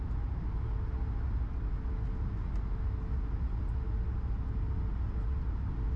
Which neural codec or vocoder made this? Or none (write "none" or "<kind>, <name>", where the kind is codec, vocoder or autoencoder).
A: none